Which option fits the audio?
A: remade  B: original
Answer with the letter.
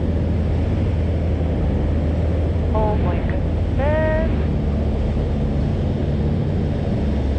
B